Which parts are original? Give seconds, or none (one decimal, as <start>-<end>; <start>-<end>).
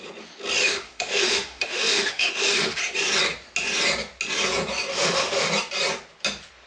0.0-0.6; 2.8-4.9; 5.5-6.7